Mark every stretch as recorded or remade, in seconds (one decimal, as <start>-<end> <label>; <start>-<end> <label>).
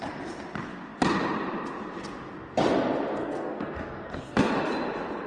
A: 0.0-3.1 recorded; 3.1-4.5 remade; 4.5-5.3 recorded